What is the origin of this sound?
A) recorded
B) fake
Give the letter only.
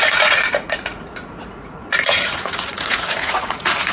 B